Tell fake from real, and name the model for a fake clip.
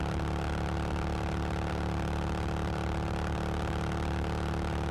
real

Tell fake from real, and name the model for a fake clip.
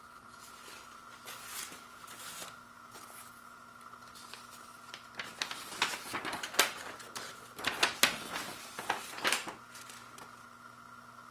real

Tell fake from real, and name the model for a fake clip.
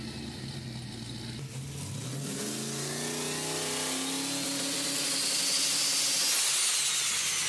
real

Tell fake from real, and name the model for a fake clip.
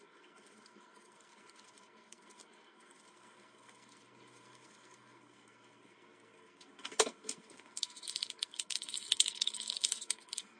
fake, codec, SNAC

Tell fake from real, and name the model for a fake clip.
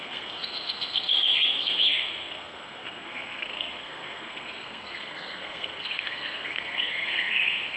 fake, codec, SNAC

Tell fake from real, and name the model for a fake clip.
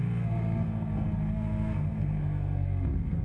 fake, codec, SNAC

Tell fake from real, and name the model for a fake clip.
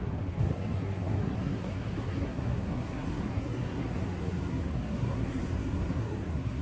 fake, codec, SNAC